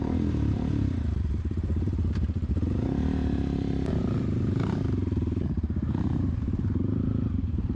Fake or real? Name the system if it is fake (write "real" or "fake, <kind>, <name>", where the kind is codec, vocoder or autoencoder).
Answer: fake, vocoder, BigVGAN v2